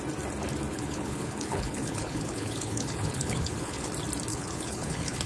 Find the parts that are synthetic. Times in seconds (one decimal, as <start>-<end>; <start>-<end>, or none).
0.7-3.9; 4.3-5.3